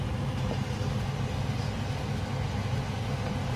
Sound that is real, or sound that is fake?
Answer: real